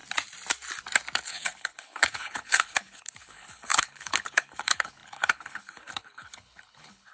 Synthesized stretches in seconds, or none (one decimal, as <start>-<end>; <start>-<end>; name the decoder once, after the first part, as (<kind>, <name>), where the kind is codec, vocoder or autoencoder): 1.3-7.1 (codec, HILCodec)